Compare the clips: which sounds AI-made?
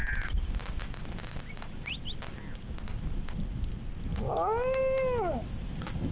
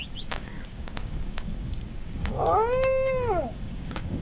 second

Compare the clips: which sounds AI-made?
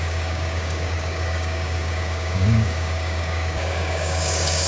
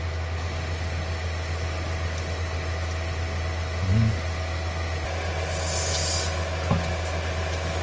first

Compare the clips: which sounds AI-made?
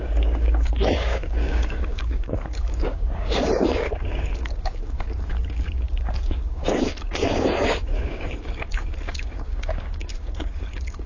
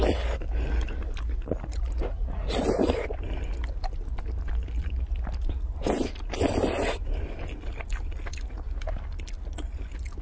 first